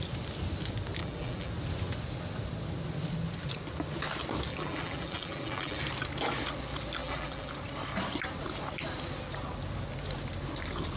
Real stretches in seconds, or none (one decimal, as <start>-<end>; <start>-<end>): 0.0-1.0; 1.5-4.5; 5.8-7.0; 7.5-11.0